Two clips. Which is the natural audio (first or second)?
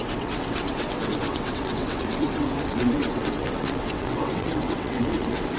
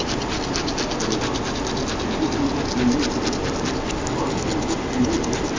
second